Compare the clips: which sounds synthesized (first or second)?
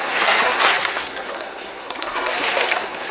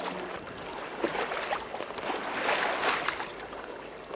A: first